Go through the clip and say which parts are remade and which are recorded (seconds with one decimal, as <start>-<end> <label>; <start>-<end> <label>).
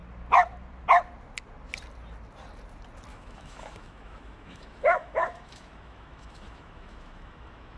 0.0-3.1 recorded; 3.1-7.8 remade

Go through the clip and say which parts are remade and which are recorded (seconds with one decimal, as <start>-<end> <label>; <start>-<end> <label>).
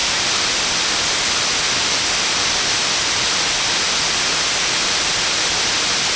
0.0-6.2 recorded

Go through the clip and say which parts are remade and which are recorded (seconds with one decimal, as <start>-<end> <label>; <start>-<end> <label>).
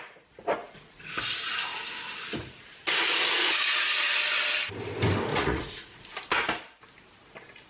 0.0-0.6 recorded; 0.6-1.2 remade; 1.2-5.3 recorded; 5.3-6.0 remade; 6.0-7.7 recorded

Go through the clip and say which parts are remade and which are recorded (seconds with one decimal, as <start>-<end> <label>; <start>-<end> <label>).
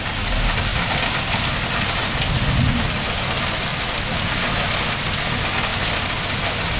0.0-6.8 recorded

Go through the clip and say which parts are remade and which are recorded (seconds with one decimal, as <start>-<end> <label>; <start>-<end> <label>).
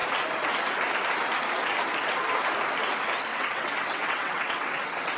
0.0-3.3 recorded; 3.3-5.2 remade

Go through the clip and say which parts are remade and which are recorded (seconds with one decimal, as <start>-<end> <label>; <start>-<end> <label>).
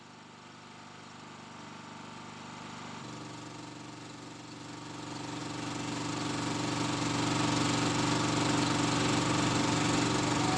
0.0-10.6 recorded